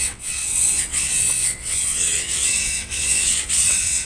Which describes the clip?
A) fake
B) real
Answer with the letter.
A